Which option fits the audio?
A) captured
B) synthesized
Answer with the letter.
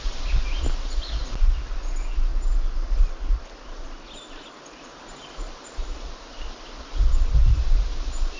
A